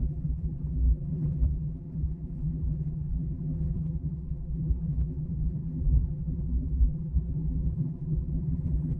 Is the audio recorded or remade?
remade